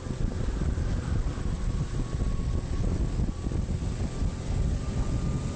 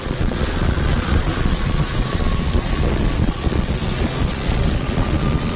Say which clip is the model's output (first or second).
second